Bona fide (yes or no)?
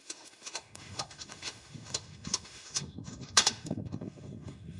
no